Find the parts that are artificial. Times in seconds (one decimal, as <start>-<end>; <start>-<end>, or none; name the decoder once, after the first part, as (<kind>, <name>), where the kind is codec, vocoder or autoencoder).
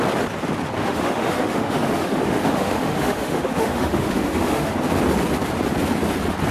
0.8-4.7 (autoencoder, DAC-VAE)